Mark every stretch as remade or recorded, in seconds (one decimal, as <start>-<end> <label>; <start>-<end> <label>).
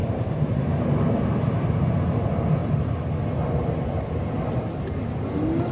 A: 0.0-1.4 remade; 1.4-5.7 recorded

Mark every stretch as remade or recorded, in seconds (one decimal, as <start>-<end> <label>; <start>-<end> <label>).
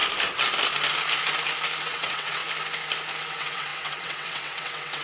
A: 0.0-1.8 recorded; 1.8-2.4 remade; 2.4-3.2 recorded; 3.2-5.0 remade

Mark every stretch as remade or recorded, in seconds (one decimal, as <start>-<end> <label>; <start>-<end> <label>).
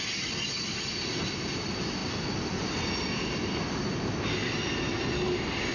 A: 0.0-5.7 recorded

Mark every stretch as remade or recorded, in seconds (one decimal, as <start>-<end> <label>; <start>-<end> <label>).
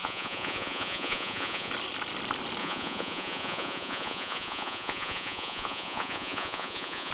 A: 0.0-1.7 remade; 1.7-2.6 recorded; 2.6-7.1 remade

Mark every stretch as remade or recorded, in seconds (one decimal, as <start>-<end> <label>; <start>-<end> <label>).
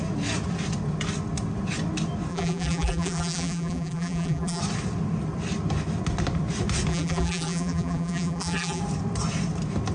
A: 0.0-2.3 recorded; 2.3-4.6 remade; 4.6-6.9 recorded; 6.9-8.8 remade; 8.8-9.9 recorded